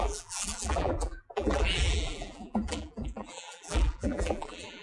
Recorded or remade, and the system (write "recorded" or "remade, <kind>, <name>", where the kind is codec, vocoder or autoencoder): remade, vocoder, BigVGAN v2